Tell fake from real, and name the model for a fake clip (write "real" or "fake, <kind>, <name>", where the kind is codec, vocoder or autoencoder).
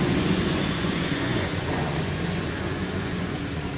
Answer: fake, vocoder, Vocos